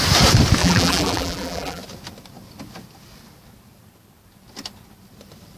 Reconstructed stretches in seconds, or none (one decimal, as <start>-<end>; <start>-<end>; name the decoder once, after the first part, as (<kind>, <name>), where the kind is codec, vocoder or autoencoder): 0.6-1.8 (vocoder, BigVGAN v2)